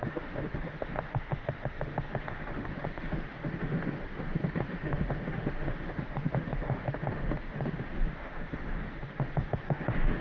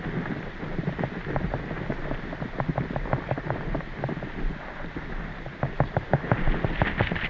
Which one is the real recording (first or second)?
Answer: second